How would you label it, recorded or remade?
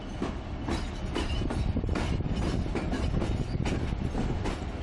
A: recorded